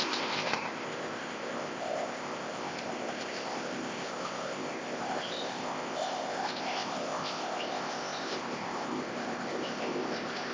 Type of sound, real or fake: fake